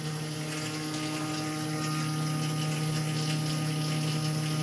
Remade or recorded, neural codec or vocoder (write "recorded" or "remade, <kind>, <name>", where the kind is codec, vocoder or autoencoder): recorded